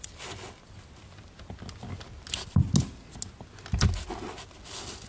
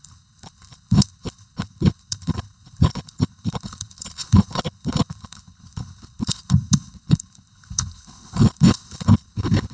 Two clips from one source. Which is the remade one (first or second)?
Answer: second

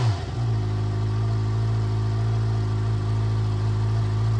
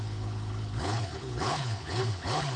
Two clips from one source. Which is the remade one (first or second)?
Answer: second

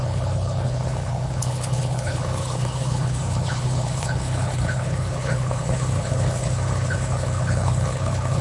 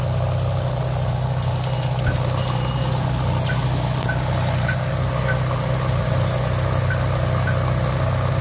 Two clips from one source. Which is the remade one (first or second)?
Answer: first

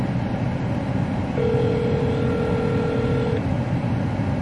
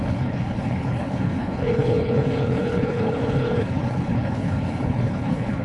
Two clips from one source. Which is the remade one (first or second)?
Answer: second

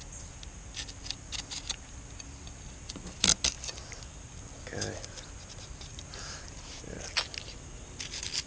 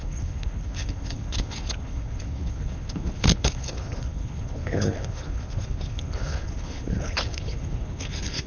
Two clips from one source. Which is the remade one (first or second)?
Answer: second